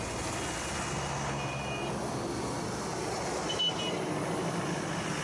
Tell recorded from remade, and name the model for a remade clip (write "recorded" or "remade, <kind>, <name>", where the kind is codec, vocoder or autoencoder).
recorded